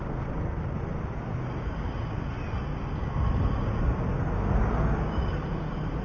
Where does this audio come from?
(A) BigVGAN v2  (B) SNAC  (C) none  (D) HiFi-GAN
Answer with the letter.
C